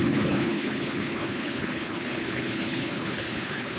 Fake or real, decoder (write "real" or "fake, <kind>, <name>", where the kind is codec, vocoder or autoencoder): fake, codec, HILCodec